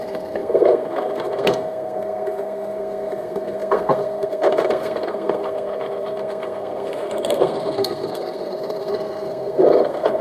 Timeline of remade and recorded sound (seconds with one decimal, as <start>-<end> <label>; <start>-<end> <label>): 0.0-10.2 remade